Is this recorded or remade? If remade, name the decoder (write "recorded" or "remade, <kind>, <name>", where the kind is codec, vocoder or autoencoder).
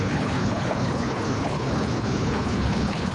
remade, codec, HILCodec